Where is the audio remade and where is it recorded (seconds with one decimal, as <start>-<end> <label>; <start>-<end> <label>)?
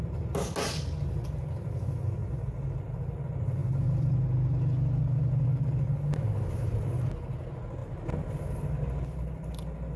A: 0.0-10.0 recorded